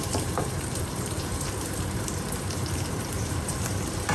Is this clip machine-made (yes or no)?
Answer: yes